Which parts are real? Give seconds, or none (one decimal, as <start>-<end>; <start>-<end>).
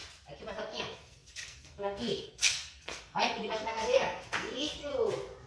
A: 0.0-0.5; 4.9-5.5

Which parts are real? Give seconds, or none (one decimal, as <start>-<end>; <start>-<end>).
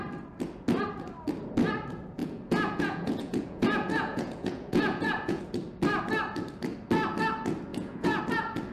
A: 0.0-2.2; 5.4-7.7; 8.2-8.7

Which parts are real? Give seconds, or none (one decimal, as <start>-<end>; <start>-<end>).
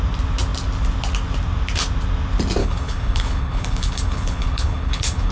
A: 0.0-2.6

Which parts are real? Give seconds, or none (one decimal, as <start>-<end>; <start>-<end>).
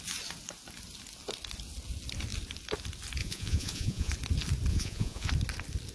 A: 0.0-3.2; 4.1-4.7; 5.3-5.9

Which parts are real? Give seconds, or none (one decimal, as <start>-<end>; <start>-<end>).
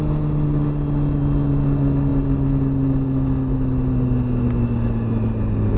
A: 0.0-5.8